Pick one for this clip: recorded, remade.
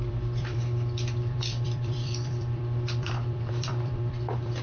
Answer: remade